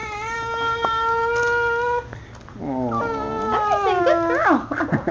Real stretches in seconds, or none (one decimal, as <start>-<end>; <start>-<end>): 0.0-5.1